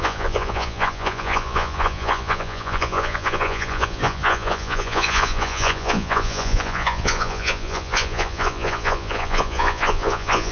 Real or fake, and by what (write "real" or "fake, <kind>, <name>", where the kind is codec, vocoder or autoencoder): fake, vocoder, Vocos